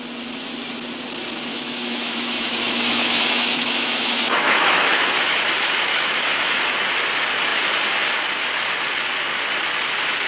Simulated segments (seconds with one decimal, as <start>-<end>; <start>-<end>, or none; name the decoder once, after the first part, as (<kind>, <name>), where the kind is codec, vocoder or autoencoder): 1.5-5.4 (autoencoder, DAC-VAE); 5.9-6.6